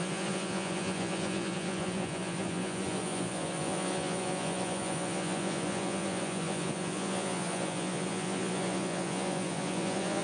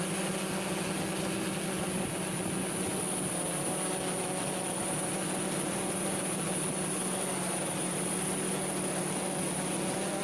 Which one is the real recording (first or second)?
second